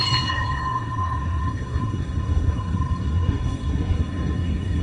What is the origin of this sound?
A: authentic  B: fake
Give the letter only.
B